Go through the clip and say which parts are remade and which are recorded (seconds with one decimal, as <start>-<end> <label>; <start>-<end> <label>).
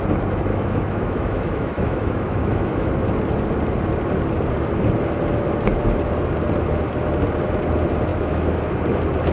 0.0-0.5 recorded; 0.5-2.9 remade; 2.9-8.1 recorded; 8.1-8.6 remade; 8.6-9.3 recorded